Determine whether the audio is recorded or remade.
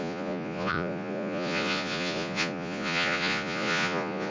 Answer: remade